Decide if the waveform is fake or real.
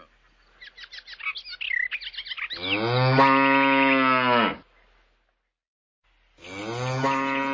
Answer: real